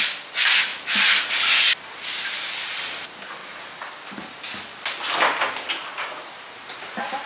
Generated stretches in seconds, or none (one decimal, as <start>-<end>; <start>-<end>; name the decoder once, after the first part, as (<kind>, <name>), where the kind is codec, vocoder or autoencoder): none